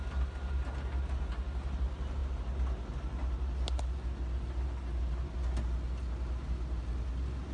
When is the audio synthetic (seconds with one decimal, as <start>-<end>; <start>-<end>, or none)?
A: none